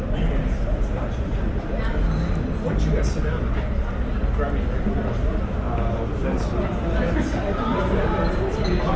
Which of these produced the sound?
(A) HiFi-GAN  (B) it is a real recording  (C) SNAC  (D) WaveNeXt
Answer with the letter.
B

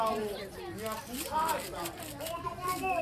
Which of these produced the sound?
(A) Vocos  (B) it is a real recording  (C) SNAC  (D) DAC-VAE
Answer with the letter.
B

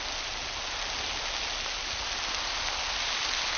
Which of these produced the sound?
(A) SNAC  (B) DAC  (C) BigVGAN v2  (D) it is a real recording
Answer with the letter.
D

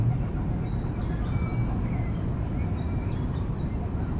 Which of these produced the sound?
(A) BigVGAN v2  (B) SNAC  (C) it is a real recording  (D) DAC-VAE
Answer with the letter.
C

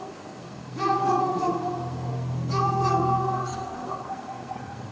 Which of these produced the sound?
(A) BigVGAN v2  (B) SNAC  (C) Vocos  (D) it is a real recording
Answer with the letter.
B